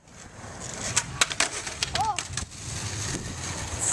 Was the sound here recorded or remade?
recorded